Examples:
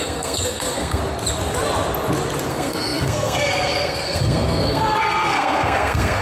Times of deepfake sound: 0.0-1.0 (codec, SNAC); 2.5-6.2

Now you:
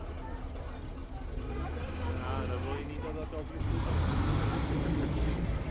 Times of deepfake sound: none

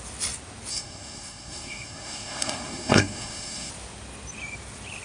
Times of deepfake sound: 0.7-3.7 (codec, SNAC)